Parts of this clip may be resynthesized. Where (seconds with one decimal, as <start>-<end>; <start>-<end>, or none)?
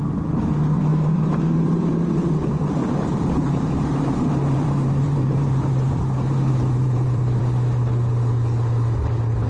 0.9-2.1; 2.8-7.4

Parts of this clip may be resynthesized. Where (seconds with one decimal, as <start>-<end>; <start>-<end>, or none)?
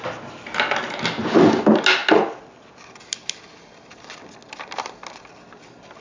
none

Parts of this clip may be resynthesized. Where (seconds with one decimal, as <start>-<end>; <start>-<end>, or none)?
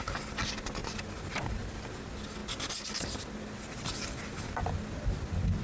none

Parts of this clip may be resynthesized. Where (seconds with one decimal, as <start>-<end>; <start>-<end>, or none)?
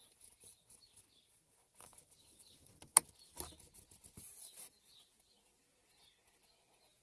0.0-0.6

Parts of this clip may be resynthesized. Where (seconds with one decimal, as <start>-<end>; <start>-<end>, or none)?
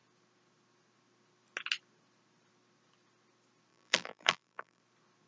3.7-4.8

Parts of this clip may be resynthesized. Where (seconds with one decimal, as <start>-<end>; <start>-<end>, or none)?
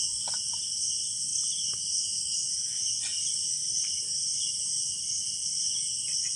none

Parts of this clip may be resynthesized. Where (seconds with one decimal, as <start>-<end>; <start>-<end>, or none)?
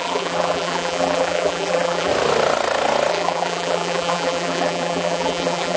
0.0-2.1; 3.1-5.8